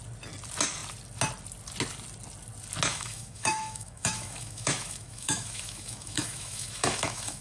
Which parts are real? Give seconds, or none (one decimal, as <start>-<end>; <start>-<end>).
0.0-2.9